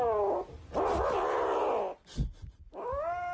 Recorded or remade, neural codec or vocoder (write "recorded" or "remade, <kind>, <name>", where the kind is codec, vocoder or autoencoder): recorded